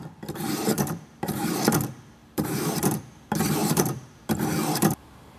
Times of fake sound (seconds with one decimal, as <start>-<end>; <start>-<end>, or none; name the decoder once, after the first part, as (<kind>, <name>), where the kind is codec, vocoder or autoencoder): 0.7-1.5 (vocoder, BigVGAN v2); 2.2-3.0; 3.6-4.2